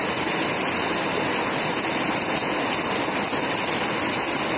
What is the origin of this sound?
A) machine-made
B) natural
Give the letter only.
B